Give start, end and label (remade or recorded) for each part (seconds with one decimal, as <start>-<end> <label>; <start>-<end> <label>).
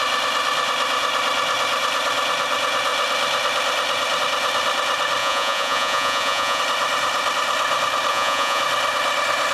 0.0-5.2 recorded; 5.2-6.6 remade; 6.6-8.1 recorded; 8.1-8.6 remade; 8.6-9.5 recorded